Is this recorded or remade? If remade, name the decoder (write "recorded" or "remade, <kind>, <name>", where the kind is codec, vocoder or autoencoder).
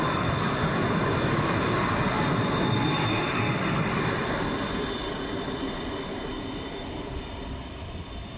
recorded